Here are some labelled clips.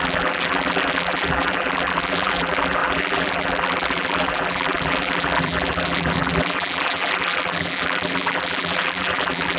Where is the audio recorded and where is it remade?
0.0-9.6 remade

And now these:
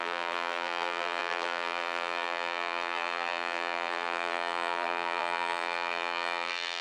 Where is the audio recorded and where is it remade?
0.0-6.8 remade

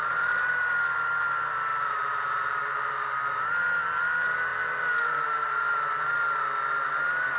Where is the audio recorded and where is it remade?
0.0-0.5 remade; 0.5-1.7 recorded; 1.7-2.9 remade; 2.9-7.4 recorded

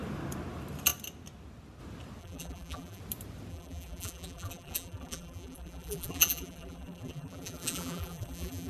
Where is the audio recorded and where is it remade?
0.0-2.2 recorded; 2.2-3.0 remade; 3.0-3.5 recorded; 3.5-8.7 remade

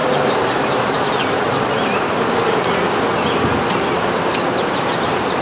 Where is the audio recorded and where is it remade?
0.0-2.3 remade; 2.3-4.3 recorded; 4.3-5.4 remade